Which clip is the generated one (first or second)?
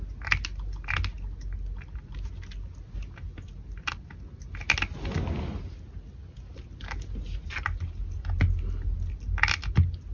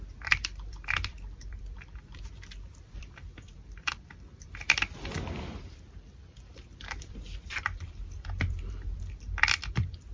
second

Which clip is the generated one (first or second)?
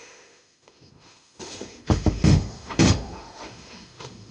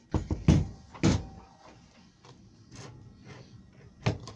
first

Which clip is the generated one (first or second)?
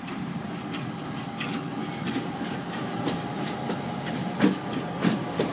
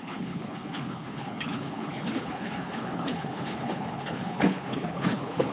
second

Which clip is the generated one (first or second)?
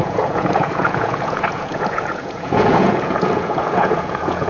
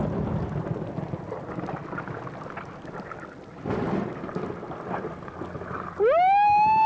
first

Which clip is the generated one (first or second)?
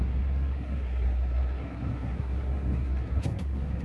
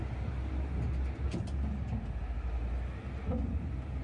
first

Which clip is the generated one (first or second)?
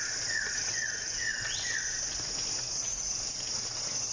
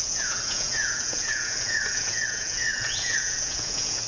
second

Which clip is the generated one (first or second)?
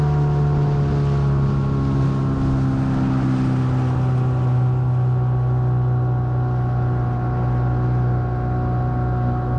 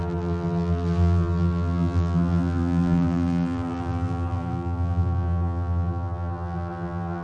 second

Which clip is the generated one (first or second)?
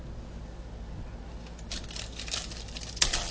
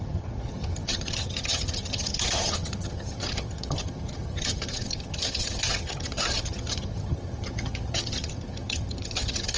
second